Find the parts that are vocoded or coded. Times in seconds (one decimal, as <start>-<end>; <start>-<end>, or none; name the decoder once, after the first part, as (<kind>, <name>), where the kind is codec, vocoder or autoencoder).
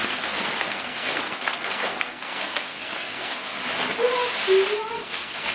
0.0-3.6 (codec, SNAC); 4.9-5.5